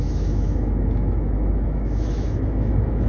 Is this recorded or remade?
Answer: remade